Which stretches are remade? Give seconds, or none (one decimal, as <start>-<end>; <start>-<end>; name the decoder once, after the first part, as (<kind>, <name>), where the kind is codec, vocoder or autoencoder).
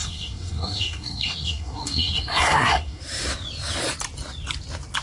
0.0-3.0 (codec, SNAC)